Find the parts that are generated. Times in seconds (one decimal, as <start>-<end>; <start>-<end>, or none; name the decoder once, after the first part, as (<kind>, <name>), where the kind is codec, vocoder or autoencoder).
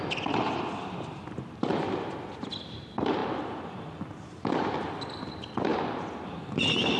0.0-1.7 (vocoder, BigVGAN v2); 2.4-5.7; 6.3-7.0